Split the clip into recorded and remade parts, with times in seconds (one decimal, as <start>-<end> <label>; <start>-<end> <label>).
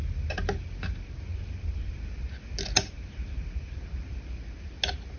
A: 0.0-5.2 recorded